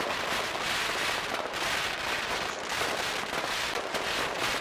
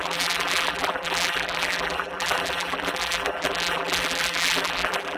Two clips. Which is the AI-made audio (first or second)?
second